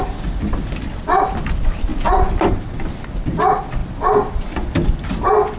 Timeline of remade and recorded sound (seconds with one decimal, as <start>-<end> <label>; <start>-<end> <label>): 0.0-5.6 recorded

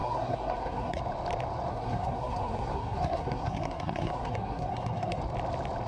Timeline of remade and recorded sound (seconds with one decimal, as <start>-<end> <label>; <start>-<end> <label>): 0.0-1.0 remade; 1.0-1.7 recorded; 1.7-5.2 remade; 5.2-5.9 recorded